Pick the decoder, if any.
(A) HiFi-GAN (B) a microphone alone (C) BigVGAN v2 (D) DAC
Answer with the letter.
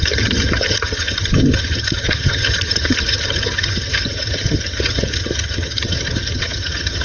A